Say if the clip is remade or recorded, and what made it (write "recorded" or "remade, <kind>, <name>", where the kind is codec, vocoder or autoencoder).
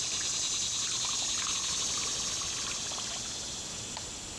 recorded